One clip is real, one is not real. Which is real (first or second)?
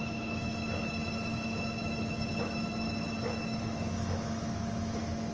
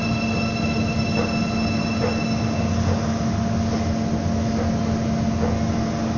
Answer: second